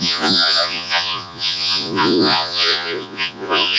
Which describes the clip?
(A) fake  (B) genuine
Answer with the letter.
A